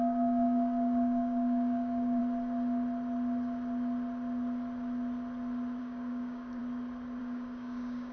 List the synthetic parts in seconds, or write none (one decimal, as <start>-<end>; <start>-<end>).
0.0-2.2; 5.8-6.6; 7.2-8.1